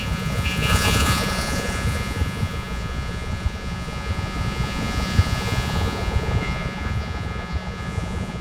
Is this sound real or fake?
fake